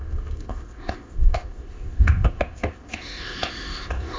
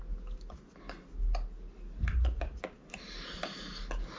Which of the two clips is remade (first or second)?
first